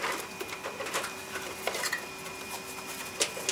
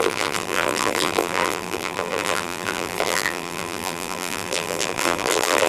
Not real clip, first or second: second